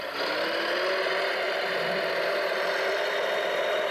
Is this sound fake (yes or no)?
no